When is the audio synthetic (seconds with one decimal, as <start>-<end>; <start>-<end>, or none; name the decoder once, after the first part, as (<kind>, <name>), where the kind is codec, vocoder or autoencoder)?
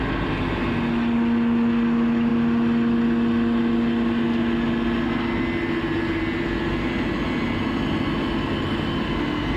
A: none